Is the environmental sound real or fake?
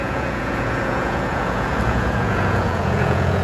fake